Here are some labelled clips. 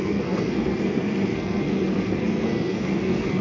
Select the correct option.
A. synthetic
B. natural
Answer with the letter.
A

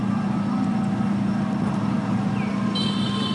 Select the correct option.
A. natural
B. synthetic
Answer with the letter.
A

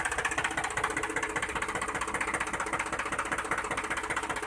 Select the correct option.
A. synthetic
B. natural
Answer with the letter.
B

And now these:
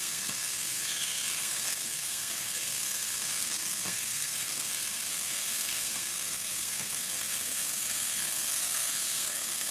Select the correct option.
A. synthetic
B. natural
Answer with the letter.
A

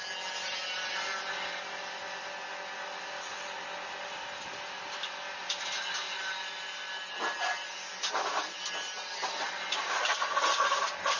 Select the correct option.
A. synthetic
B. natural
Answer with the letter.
B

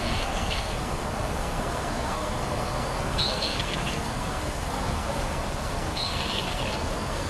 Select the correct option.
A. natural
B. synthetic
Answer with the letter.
B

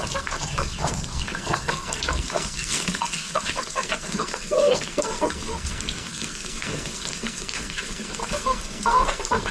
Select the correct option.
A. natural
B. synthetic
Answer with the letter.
B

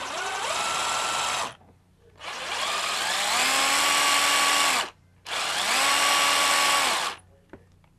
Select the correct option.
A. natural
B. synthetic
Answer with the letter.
A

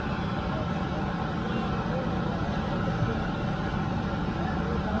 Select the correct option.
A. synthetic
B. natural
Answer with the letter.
B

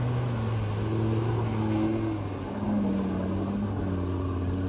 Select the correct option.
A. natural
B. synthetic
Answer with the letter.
A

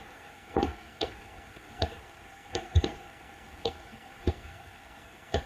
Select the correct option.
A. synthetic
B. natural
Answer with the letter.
A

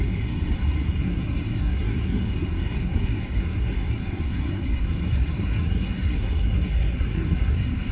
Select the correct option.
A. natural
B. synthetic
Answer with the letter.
B